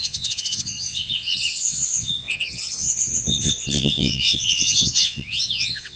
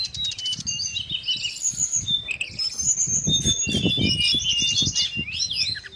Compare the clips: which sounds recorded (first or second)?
second